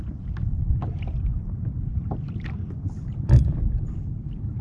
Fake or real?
real